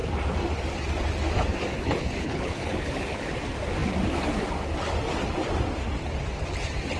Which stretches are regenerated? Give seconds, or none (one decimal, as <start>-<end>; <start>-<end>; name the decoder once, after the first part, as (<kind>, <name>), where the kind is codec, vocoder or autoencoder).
1.7-3.3 (codec, HILCodec)